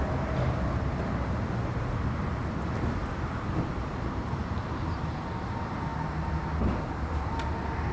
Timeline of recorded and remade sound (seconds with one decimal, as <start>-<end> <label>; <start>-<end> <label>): 0.0-7.9 recorded